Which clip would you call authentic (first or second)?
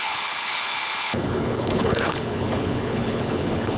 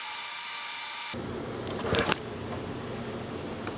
second